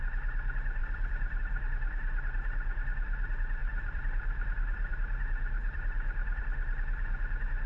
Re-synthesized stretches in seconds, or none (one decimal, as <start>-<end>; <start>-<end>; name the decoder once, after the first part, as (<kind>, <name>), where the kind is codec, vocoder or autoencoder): 0.8-1.4 (vocoder, BigVGAN v2); 3.6-4.9; 5.6-6.4